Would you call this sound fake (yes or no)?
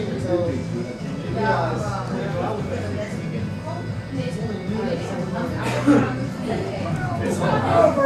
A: no